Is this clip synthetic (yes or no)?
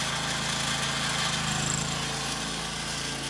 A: no